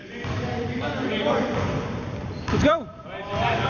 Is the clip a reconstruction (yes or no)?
yes